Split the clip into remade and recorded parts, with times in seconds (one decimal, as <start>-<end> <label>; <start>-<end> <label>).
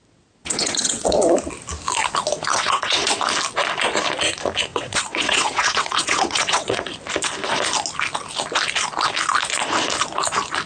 0.0-0.4 recorded; 0.4-1.3 remade; 1.3-2.5 recorded; 2.5-3.1 remade; 3.1-4.7 recorded; 4.7-6.9 remade; 6.9-10.7 recorded